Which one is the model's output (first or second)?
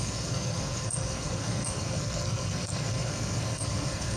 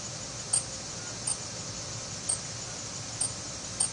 first